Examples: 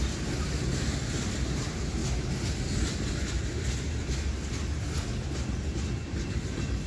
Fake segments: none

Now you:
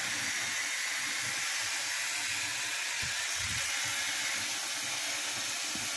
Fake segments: 2.5-3.7 (vocoder, WaveNeXt)

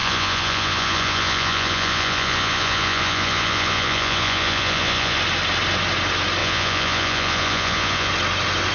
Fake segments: 0.0-5.2 (vocoder, Vocos); 6.4-8.1

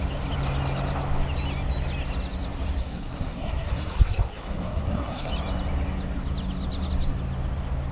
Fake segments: 2.8-5.3 (codec, SNAC)

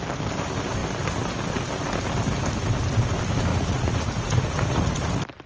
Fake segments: 3.5-5.1 (vocoder, Vocos)

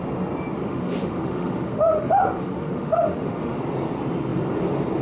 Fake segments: 0.6-3.6 (autoencoder, DAC-VAE)